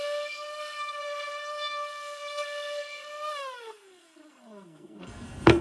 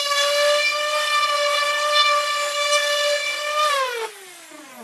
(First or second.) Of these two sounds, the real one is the second